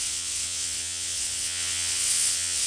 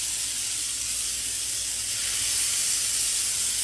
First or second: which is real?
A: second